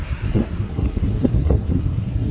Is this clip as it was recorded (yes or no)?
no